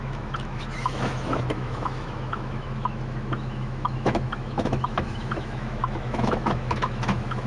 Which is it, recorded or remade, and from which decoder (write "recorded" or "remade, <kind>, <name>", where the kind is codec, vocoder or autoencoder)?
remade, autoencoder, DAC-VAE